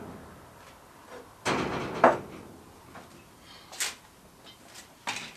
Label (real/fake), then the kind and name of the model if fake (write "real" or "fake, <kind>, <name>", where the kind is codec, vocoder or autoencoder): real